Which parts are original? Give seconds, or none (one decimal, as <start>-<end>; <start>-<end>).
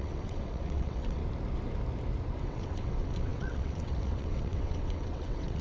1.2-2.4